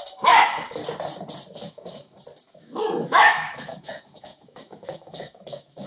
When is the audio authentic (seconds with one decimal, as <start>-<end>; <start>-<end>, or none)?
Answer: 0.8-1.5